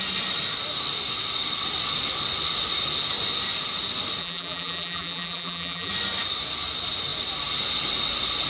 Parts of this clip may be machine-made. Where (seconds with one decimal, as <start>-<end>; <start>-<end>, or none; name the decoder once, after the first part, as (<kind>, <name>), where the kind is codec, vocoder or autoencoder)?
4.2-5.9 (vocoder, BigVGAN v2)

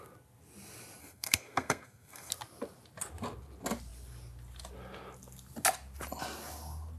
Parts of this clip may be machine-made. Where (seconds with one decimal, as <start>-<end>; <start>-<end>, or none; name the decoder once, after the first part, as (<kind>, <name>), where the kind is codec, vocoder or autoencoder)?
1.0-2.3 (codec, SNAC)

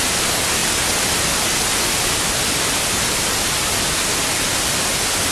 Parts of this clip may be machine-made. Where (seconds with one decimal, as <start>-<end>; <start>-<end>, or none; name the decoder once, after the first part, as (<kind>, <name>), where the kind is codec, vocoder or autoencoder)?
none

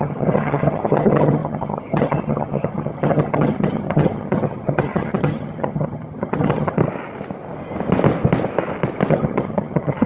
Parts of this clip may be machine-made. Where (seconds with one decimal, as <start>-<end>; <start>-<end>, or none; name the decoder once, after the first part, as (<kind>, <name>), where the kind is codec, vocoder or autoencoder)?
0.0-6.8 (vocoder, HiFi-GAN); 9.1-10.1

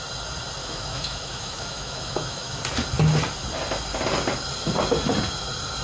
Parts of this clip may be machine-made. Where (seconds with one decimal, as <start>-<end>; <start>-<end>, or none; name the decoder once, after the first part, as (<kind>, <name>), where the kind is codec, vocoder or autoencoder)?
0.6-2.6 (autoencoder, DAC-VAE)

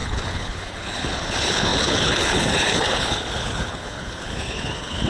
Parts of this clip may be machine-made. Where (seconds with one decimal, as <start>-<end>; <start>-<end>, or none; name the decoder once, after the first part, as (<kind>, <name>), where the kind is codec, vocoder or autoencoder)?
0.0-5.1 (codec, HILCodec)